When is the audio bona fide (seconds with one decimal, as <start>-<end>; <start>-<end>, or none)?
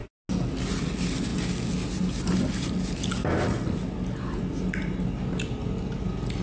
0.0-6.4